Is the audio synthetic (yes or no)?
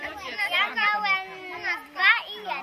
no